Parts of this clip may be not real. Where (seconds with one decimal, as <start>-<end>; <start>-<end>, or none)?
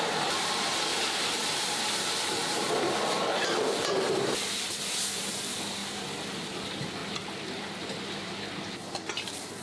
0.9-2.7; 3.4-4.7